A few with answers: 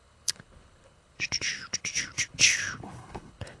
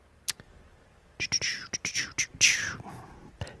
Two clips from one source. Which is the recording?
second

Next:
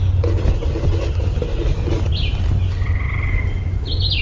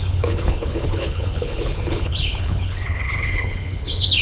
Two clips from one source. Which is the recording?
first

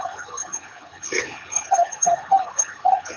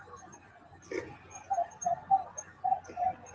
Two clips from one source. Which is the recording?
second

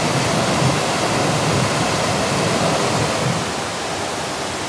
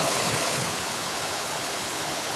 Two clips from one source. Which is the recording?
first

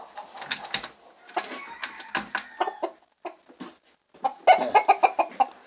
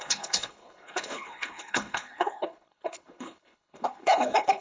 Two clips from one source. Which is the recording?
first